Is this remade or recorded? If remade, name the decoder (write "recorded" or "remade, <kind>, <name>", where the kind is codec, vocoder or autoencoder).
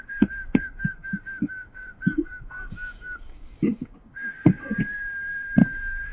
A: remade, codec, DAC